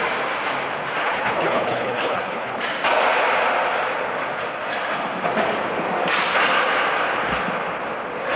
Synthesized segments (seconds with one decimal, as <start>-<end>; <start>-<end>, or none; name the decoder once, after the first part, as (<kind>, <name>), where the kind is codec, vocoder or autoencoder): 1.0-2.6 (codec, HILCodec)

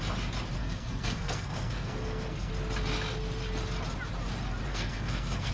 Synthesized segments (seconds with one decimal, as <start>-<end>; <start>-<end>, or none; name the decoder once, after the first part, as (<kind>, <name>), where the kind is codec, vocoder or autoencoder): 0.6-2.5 (codec, SNAC); 4.7-5.5

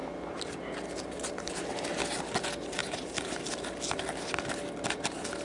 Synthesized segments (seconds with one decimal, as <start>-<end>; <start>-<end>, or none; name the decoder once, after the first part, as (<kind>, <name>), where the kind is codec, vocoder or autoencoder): 2.8-3.5 (vocoder, BigVGAN v2)